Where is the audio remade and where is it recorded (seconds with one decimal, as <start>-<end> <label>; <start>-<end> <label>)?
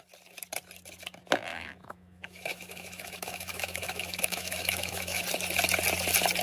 0.0-1.5 recorded; 1.5-5.2 remade; 5.2-6.4 recorded